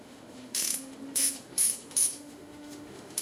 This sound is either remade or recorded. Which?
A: remade